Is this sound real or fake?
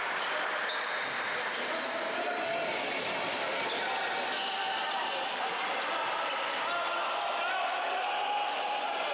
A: real